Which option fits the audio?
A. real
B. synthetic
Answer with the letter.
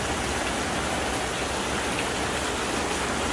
A